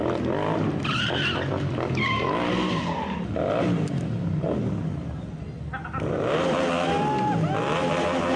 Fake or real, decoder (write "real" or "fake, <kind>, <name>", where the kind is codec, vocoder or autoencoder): real